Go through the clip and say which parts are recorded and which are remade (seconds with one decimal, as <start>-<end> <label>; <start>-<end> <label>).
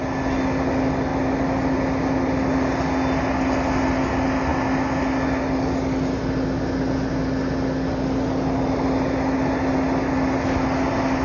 0.0-11.2 recorded